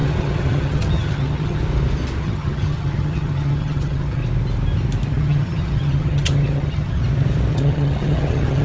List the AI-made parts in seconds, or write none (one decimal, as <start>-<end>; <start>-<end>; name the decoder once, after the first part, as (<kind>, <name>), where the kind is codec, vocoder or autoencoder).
0.0-1.6 (vocoder, HiFi-GAN); 2.2-4.2; 5.1-7.0; 7.5-8.6